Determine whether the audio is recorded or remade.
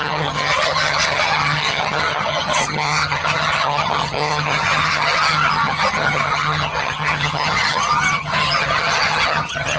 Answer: remade